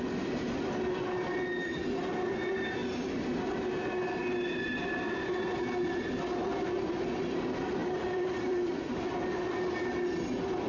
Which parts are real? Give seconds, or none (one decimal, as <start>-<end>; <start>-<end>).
0.0-7.8; 9.1-10.7